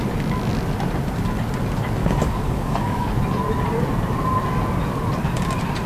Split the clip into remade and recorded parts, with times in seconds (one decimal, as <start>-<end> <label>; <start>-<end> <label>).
0.0-2.0 recorded; 2.0-3.1 remade; 3.1-5.9 recorded